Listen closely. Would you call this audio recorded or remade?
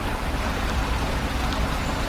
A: remade